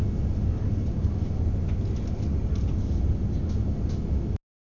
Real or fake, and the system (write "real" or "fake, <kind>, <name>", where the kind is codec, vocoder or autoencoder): real